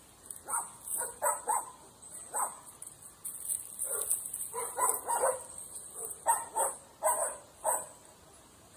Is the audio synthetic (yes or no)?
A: no